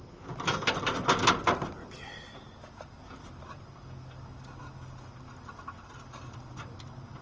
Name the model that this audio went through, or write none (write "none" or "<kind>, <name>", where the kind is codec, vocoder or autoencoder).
none